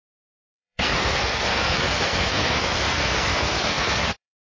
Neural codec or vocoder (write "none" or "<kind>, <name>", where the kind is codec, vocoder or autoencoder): codec, SNAC